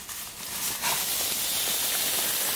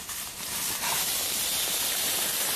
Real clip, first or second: first